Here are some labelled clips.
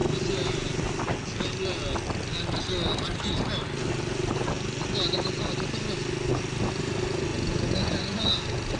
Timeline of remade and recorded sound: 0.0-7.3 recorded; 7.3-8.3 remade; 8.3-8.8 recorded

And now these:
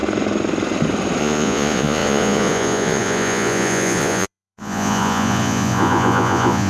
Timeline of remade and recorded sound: 0.0-1.2 recorded; 1.2-6.7 remade

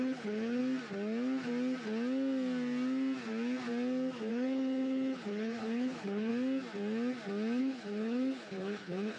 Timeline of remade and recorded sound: 0.0-0.6 remade; 0.6-4.3 recorded; 4.3-6.3 remade; 6.3-7.6 recorded; 7.6-9.2 remade

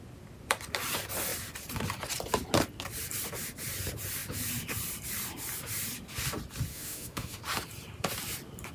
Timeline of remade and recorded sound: 0.0-6.7 recorded; 6.7-7.4 remade; 7.4-8.7 recorded

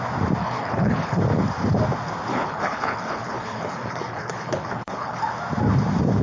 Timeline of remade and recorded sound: 0.0-0.4 recorded; 0.4-1.2 remade; 1.2-2.3 recorded; 2.3-5.2 remade; 5.2-6.2 recorded

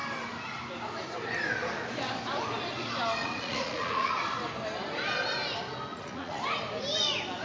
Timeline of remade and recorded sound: 0.0-3.2 recorded; 3.2-4.1 remade; 4.1-5.9 recorded; 5.9-6.4 remade; 6.4-7.4 recorded